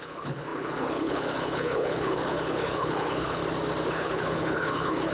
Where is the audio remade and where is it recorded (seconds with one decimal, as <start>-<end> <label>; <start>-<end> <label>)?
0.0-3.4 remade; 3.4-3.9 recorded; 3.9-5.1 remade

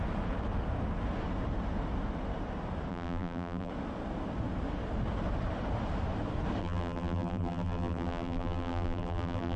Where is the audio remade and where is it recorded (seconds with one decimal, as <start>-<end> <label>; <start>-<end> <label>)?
0.0-2.9 recorded; 2.9-3.7 remade; 3.7-6.6 recorded; 6.6-9.6 remade

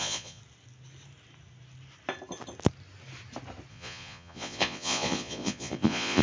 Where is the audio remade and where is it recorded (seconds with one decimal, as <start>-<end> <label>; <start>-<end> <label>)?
0.0-0.4 remade; 0.4-3.7 recorded; 3.7-6.2 remade

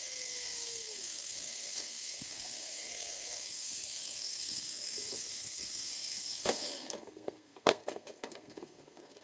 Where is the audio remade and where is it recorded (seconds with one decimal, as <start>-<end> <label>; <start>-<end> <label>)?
0.0-9.2 remade

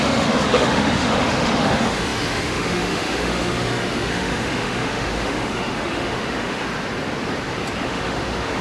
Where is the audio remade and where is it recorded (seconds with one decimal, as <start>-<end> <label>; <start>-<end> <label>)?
0.0-6.6 remade; 6.6-7.8 recorded; 7.8-8.6 remade

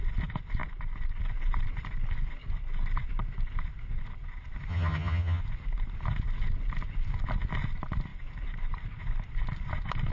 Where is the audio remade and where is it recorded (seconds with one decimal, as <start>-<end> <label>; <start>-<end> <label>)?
0.0-4.7 recorded; 4.7-5.4 remade; 5.4-10.1 recorded

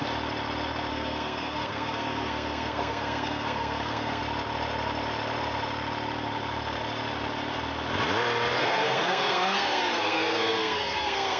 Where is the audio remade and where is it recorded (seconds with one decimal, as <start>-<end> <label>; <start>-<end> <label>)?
0.0-0.9 recorded; 0.9-4.2 remade; 4.2-8.6 recorded; 8.6-11.4 remade